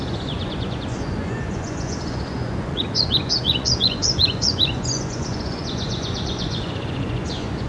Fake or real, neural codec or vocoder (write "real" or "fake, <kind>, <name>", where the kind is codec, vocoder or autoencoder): fake, vocoder, Vocos